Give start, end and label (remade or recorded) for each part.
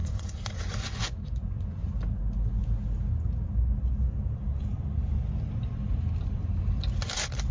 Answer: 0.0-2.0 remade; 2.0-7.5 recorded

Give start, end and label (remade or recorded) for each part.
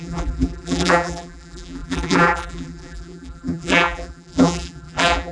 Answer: 0.0-5.3 remade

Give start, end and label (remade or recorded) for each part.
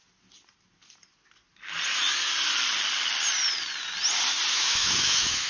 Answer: 0.0-4.5 recorded; 4.5-5.5 remade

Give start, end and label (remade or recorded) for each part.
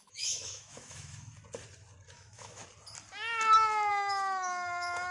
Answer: 0.0-1.3 remade; 1.3-2.1 recorded; 2.1-2.6 remade; 2.6-3.9 recorded; 3.9-5.1 remade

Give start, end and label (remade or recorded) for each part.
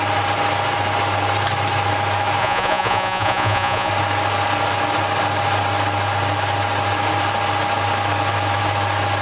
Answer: 0.0-2.4 recorded; 2.4-3.9 remade; 3.9-9.2 recorded